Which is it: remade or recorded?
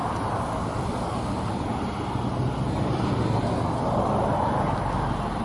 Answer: recorded